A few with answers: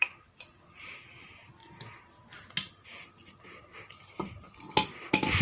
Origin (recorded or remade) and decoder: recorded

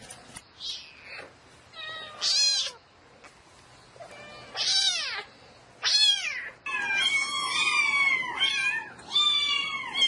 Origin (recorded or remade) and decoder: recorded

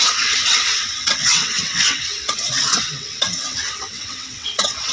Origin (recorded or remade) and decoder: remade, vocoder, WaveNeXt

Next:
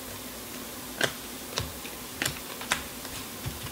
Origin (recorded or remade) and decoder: recorded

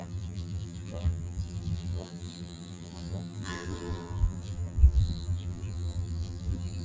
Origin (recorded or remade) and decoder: remade, vocoder, BigVGAN v2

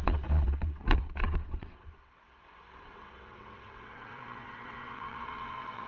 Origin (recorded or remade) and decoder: remade, vocoder, WaveNeXt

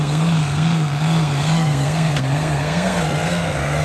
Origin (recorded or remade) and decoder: remade, codec, SNAC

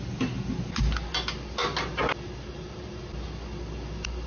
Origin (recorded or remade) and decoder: recorded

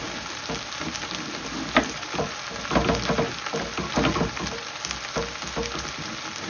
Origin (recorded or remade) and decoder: recorded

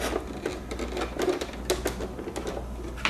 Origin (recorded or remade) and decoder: recorded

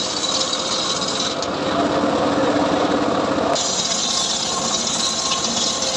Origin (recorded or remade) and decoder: recorded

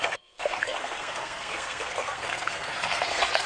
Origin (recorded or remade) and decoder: remade, codec, SNAC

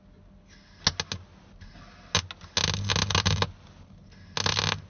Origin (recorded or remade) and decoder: recorded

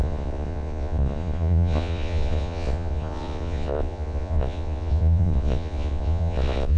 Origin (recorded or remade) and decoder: remade, vocoder, Vocos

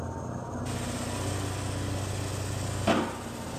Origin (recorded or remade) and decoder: recorded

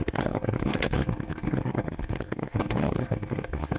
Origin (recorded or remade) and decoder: remade, codec, SNAC